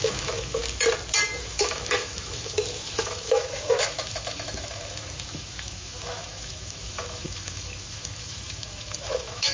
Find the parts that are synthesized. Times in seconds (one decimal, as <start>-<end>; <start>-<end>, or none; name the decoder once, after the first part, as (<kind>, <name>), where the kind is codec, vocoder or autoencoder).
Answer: 0.0-0.6 (autoencoder, DAC-VAE); 1.4-9.5